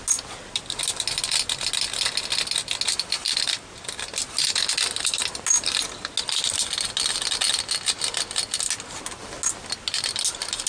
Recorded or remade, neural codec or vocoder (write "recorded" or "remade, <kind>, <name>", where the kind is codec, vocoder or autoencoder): recorded